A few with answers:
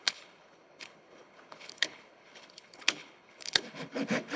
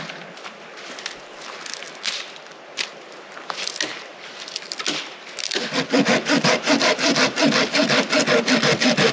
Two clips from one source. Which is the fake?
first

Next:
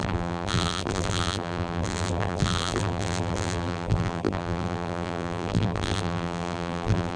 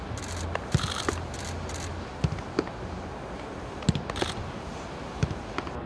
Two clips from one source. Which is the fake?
first